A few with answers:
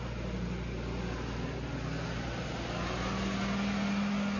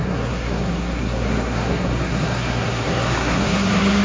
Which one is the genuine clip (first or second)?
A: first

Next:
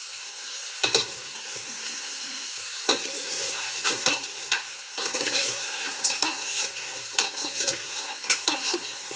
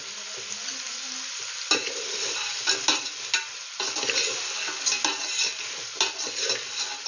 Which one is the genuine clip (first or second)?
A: second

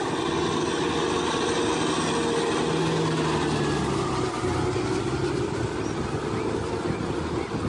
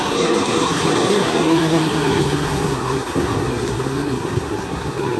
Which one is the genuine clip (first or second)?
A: first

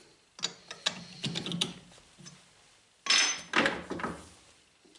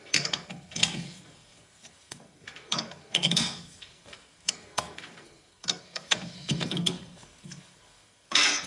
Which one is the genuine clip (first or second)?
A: first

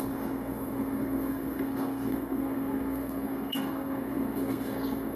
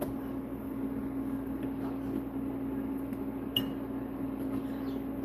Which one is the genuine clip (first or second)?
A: second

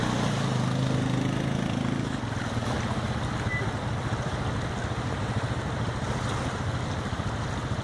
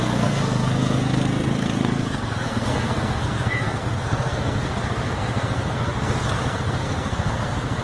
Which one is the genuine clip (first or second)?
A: first